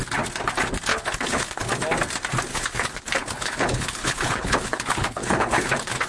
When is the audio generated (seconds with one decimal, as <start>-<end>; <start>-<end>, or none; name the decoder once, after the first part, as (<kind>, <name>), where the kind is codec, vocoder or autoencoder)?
0.9-1.7 (codec, HILCodec); 2.5-6.1

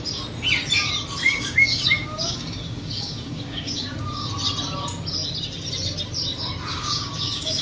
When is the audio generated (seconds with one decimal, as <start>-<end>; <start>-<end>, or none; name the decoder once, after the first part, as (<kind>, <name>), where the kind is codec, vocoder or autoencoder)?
1.2-4.3 (codec, DAC); 6.7-7.6